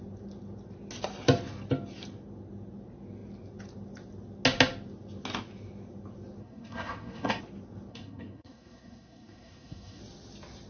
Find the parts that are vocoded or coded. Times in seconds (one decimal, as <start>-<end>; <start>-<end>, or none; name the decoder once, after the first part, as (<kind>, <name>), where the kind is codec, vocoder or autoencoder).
6.4-7.4 (codec, SNAC); 7.9-10.0